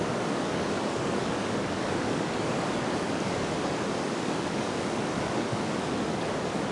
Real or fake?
fake